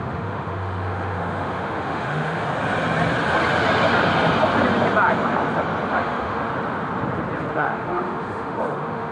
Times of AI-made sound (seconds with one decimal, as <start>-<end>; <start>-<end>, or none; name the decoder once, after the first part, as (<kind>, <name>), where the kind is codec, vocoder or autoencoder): 0.0-2.5 (autoencoder, DAC-VAE); 5.9-6.5; 7.5-9.1